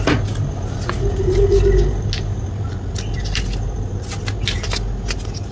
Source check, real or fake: real